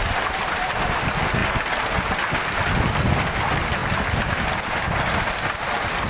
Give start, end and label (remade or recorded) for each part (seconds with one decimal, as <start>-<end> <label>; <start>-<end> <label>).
0.0-6.1 recorded